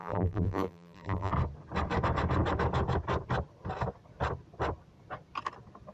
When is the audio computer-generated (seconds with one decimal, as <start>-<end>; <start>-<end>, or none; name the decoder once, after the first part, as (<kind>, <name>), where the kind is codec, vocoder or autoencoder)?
0.0-1.3 (vocoder, BigVGAN v2)